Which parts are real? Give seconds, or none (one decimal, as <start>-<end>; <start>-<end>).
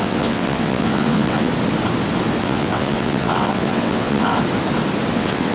1.5-2.4; 4.3-5.1